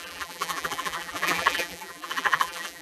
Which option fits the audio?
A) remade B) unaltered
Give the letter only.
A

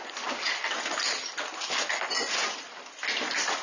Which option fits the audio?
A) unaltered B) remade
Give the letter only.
A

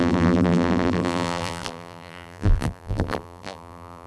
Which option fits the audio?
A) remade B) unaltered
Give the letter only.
A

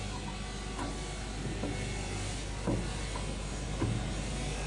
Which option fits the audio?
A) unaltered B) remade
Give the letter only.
A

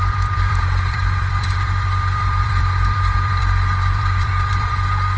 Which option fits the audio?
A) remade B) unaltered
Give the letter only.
A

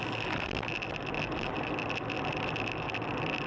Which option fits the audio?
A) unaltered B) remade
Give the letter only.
A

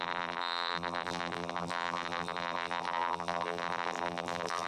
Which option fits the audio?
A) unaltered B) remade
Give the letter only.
B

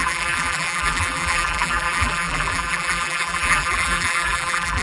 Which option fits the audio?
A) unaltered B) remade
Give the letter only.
B